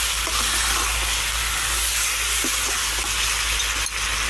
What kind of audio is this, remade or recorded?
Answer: recorded